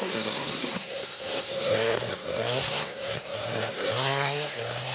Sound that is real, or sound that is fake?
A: fake